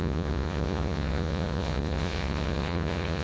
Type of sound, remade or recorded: remade